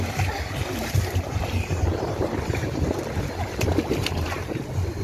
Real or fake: fake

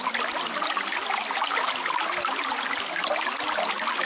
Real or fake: real